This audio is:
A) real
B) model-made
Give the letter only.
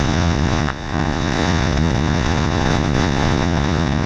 B